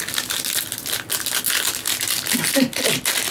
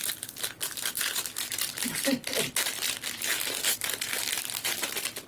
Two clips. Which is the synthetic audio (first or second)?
second